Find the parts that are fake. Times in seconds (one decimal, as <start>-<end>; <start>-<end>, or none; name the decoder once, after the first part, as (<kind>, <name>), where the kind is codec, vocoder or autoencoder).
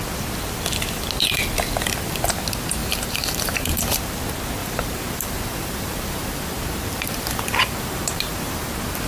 2.8-4.0 (vocoder, BigVGAN v2); 4.6-8.7